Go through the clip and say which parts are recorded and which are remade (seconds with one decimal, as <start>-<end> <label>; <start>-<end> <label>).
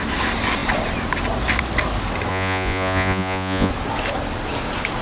0.0-2.3 recorded; 2.3-3.7 remade; 3.7-5.0 recorded